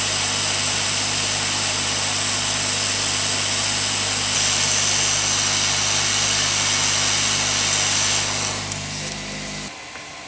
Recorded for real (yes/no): yes